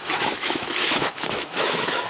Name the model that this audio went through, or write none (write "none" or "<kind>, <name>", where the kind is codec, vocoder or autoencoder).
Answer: autoencoder, DAC-VAE